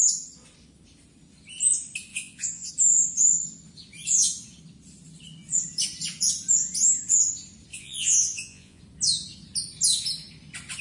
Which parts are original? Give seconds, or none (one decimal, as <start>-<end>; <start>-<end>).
0.0-2.1; 2.7-7.7; 8.8-10.8